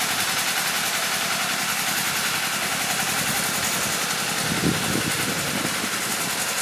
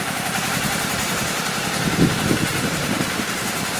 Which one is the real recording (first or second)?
first